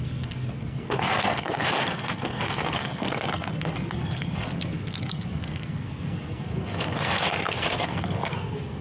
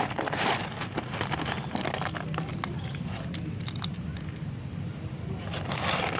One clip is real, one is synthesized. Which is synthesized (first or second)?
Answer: first